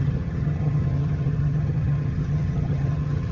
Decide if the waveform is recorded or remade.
remade